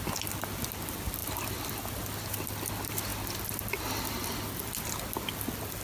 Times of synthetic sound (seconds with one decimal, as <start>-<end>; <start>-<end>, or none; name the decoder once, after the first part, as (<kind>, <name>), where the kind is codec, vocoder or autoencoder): none